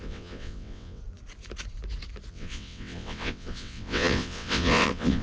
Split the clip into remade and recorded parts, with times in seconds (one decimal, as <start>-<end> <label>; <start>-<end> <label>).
0.0-1.0 remade; 1.0-2.3 recorded; 2.3-5.2 remade